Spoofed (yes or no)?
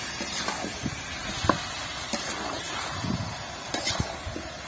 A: no